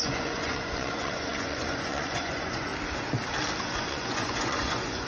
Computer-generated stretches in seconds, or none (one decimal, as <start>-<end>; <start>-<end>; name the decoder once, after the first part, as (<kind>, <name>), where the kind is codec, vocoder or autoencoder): 0.0-2.7 (vocoder, Vocos); 3.6-5.1